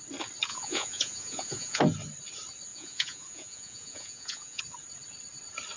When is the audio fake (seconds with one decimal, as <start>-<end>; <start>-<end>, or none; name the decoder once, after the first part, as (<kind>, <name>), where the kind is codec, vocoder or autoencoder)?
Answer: 0.5-1.8 (vocoder, Vocos); 2.7-4.6